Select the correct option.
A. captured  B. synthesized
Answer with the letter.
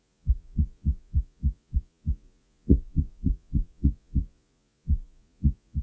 B